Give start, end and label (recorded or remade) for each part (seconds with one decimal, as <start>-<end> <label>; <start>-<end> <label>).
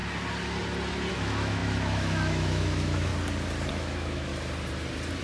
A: 0.0-1.1 recorded; 1.1-3.1 remade; 3.1-3.7 recorded; 3.7-4.3 remade; 4.3-5.2 recorded